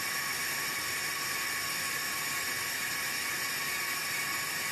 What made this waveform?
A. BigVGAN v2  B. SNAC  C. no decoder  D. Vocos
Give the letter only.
C